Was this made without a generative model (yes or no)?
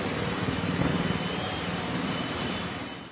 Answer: yes